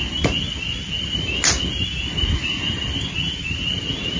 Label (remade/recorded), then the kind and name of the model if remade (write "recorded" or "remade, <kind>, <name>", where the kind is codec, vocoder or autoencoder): recorded